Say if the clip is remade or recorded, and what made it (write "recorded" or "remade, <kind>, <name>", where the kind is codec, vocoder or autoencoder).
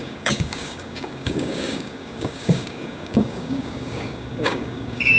remade, codec, DAC